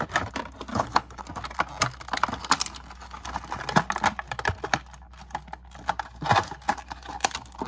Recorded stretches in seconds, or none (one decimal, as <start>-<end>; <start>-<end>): 0.0-0.7; 1.2-7.7